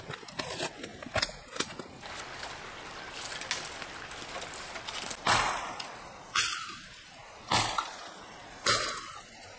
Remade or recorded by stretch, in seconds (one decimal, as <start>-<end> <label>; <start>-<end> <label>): 0.0-9.6 recorded